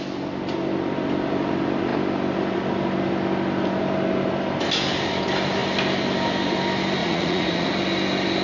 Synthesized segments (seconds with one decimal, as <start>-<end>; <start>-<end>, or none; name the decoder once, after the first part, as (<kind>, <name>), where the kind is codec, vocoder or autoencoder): 7.0-7.7 (vocoder, Vocos)